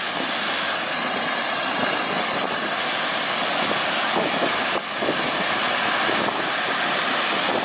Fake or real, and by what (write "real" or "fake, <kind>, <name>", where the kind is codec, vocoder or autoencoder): real